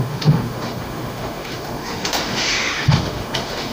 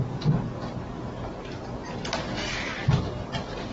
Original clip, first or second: second